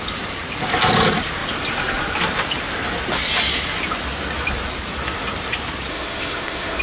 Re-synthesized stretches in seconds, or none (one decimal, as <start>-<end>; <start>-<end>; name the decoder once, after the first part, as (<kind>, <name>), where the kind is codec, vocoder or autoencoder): 5.9-6.8 (autoencoder, DAC-VAE)